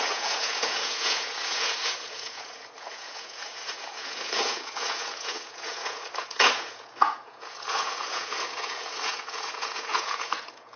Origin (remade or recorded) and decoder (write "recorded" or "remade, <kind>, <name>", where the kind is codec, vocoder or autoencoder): remade, vocoder, Vocos